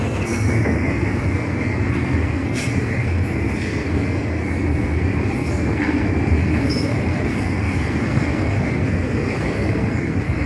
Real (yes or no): no